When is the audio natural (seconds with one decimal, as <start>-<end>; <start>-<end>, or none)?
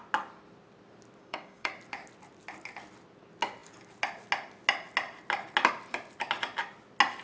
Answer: 0.0-1.2; 1.7-7.2